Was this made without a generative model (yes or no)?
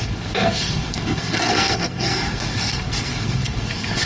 no